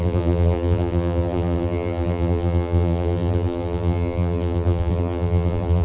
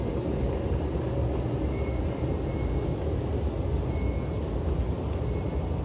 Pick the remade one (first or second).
first